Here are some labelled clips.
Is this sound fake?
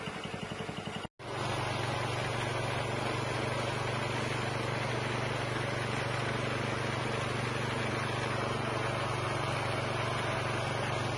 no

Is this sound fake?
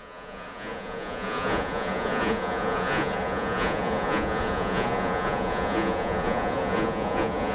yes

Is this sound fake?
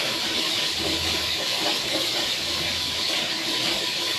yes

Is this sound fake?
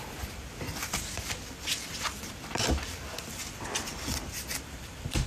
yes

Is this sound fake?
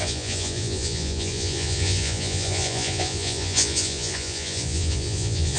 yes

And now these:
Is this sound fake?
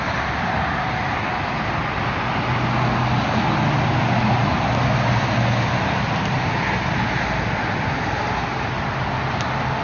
no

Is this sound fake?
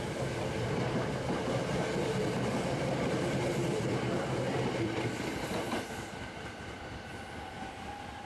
no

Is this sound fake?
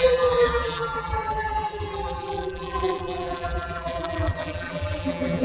yes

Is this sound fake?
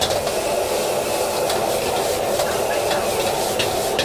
no